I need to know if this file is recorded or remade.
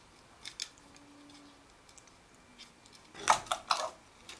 recorded